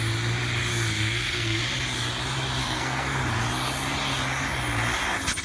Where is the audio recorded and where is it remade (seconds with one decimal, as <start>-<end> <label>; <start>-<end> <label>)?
0.0-0.7 recorded; 0.7-1.6 remade; 1.6-2.6 recorded; 2.6-3.2 remade; 3.2-5.4 recorded